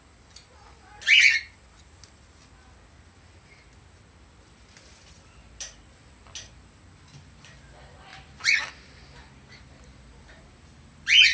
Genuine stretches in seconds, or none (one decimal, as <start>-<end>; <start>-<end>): 0.0-11.3